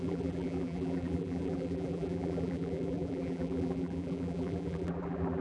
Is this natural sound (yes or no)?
no